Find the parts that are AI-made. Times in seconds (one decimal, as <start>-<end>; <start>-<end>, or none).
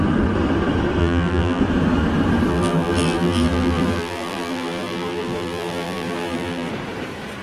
1.0-1.6; 2.5-6.7